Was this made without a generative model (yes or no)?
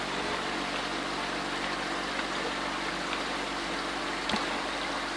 yes